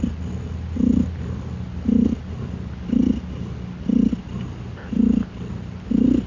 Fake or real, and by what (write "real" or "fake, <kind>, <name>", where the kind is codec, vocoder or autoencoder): real